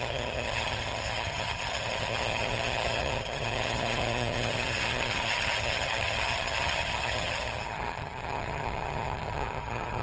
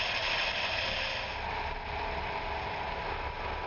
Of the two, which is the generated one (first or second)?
first